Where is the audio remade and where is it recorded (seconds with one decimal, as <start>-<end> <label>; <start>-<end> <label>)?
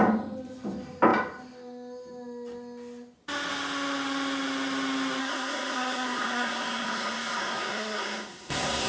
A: 0.0-5.2 recorded; 5.2-8.9 remade